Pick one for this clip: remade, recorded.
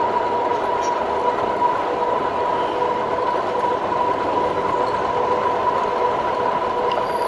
recorded